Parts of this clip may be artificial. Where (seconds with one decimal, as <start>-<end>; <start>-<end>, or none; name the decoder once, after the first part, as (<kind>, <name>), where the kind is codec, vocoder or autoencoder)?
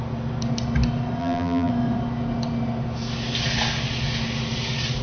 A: 1.2-1.7 (vocoder, BigVGAN v2)